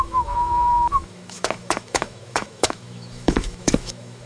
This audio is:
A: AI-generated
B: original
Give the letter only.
A